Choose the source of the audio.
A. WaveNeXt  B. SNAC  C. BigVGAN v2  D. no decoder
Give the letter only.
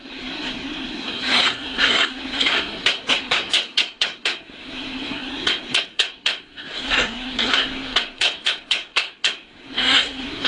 B